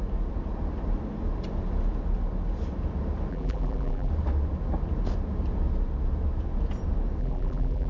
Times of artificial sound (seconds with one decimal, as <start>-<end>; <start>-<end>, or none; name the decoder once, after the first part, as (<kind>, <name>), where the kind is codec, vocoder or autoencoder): 3.3-4.1 (vocoder, BigVGAN v2); 7.2-7.9